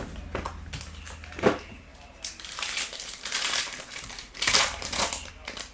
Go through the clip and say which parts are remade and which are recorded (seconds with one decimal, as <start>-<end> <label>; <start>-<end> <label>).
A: 0.0-1.9 recorded; 1.9-5.3 remade; 5.3-5.7 recorded